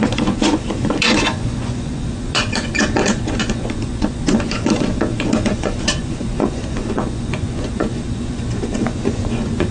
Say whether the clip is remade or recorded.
remade